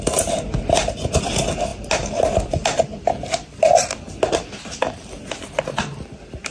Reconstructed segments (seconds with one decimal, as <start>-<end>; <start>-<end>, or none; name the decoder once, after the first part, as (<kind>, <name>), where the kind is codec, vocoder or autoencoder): none